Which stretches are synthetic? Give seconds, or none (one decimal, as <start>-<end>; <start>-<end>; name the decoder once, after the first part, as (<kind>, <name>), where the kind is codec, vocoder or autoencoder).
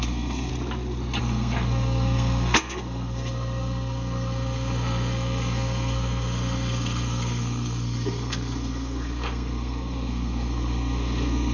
0.0-0.5 (codec, SNAC); 1.2-11.5